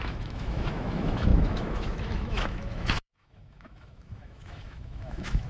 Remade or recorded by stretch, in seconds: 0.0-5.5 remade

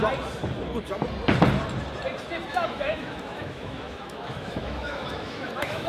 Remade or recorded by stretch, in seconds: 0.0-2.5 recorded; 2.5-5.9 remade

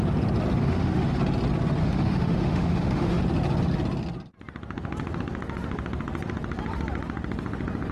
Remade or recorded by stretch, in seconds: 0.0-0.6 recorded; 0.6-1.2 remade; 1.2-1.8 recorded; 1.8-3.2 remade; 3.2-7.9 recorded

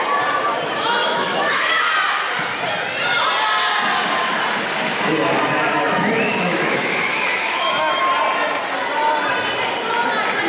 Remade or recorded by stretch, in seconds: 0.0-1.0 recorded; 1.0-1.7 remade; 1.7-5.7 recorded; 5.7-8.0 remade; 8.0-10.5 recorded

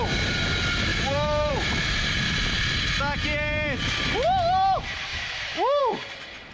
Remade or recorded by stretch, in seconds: 0.0-0.9 recorded; 0.9-1.5 remade; 1.5-5.1 recorded; 5.1-5.8 remade; 5.8-6.5 recorded